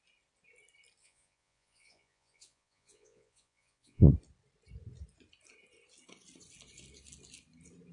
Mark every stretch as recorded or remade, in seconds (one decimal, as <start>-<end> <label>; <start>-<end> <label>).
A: 0.0-1.0 recorded; 1.0-4.1 remade; 4.1-7.9 recorded